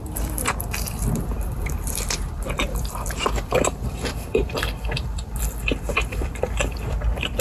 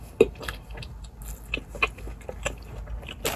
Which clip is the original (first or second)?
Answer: second